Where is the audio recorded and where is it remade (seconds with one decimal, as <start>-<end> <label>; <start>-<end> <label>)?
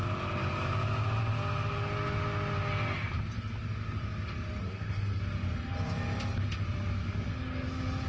0.0-4.6 recorded; 4.6-5.2 remade; 5.2-8.1 recorded